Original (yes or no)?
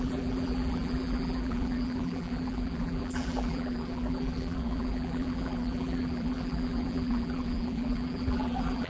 no